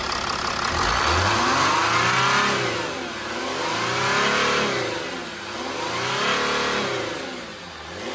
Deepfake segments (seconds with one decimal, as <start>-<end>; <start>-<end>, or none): none